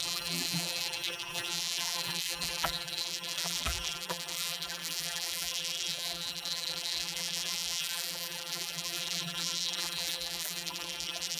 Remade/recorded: remade